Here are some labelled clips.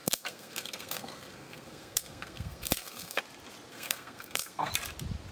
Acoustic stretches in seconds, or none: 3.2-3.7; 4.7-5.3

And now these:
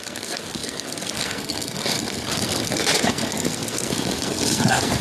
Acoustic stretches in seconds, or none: none

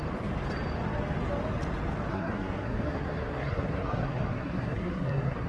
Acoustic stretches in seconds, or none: 0.0-2.1

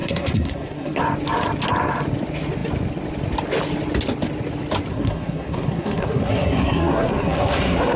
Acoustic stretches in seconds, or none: 1.0-4.9

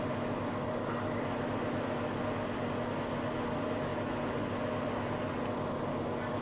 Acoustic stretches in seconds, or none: 0.0-6.4

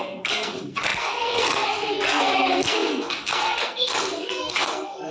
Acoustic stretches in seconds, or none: none

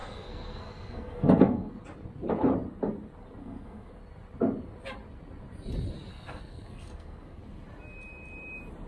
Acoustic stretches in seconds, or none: 1.7-3.4; 4.0-6.1; 7.4-8.9